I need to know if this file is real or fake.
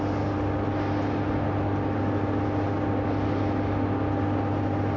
real